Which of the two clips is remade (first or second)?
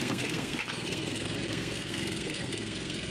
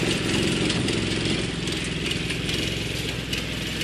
first